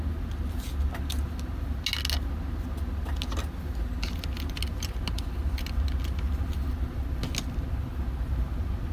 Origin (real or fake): real